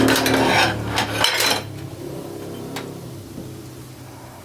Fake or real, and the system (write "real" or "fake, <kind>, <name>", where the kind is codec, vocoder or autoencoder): real